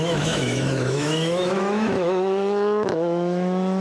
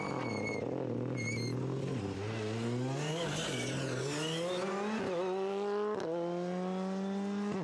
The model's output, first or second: first